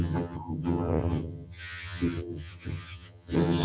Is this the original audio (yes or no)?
no